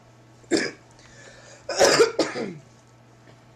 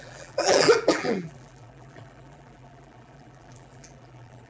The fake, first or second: second